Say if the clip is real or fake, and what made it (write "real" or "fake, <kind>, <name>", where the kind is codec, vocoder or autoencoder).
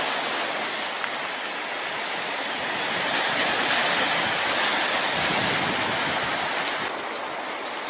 real